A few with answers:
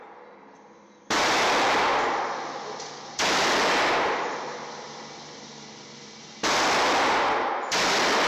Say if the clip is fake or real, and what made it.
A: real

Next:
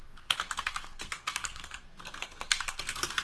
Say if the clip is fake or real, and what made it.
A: fake, codec, SNAC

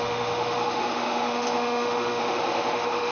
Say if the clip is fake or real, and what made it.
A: fake, autoencoder, DAC-VAE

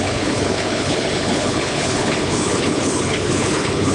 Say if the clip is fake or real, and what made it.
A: fake, codec, HILCodec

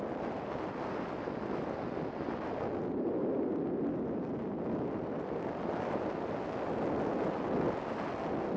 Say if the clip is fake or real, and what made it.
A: real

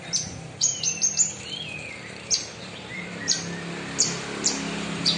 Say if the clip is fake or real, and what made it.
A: fake, vocoder, BigVGAN v2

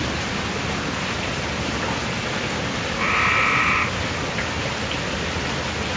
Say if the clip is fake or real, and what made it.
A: real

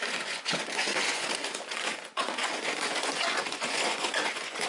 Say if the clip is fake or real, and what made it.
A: fake, vocoder, Vocos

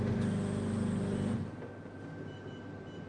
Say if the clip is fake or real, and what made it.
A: real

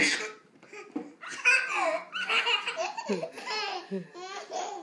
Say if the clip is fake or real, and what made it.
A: real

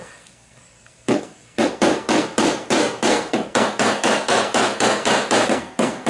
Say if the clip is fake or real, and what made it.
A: fake, codec, SNAC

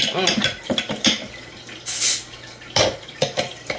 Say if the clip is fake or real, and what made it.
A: real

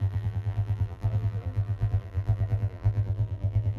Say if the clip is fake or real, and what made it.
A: fake, vocoder, BigVGAN v2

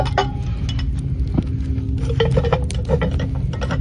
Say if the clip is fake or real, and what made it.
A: real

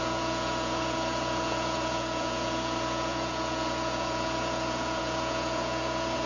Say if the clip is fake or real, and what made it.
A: fake, vocoder, Vocos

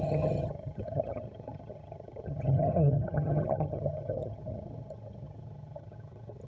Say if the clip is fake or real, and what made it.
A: fake, vocoder, HiFi-GAN